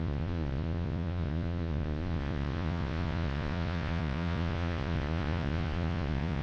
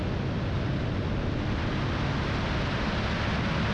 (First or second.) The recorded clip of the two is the second